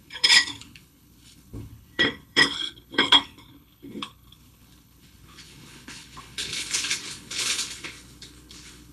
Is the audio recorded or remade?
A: remade